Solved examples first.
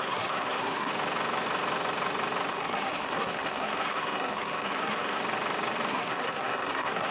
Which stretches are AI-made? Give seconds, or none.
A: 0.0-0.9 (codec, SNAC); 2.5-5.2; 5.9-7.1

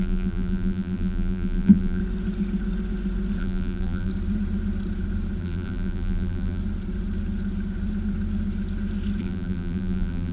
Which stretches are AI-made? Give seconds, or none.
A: 0.0-2.0 (vocoder, BigVGAN v2); 3.4-4.1; 5.4-6.6; 9.2-10.3

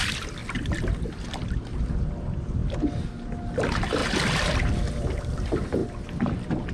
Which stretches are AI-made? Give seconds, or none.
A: 0.0-0.4 (vocoder, BigVGAN v2); 1.3-2.6; 3.4-4.0; 4.9-5.8

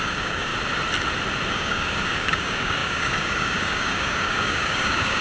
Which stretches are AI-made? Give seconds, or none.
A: 0.0-0.5 (codec, DAC); 1.5-5.2

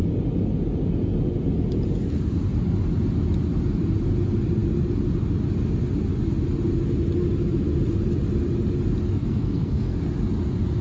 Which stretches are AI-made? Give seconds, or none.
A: 9.2-10.0 (codec, SNAC)